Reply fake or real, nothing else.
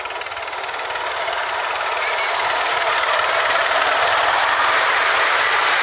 real